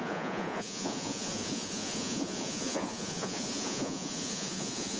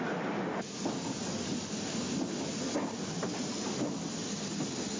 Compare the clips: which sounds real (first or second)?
second